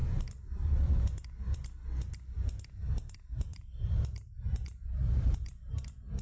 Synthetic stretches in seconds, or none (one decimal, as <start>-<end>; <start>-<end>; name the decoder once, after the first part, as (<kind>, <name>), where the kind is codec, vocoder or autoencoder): 3.5-5.8 (vocoder, BigVGAN v2)